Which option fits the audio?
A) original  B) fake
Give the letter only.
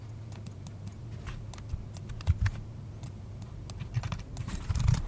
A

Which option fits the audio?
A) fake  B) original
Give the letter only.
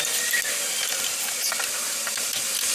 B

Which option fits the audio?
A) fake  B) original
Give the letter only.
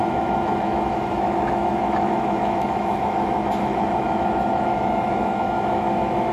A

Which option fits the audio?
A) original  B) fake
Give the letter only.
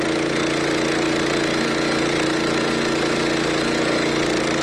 A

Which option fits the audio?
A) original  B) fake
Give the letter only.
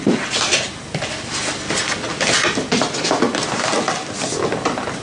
A